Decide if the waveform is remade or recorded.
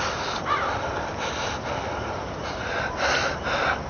recorded